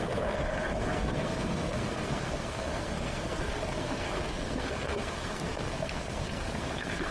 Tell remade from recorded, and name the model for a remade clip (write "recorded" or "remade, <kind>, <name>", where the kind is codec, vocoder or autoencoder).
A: remade, codec, SNAC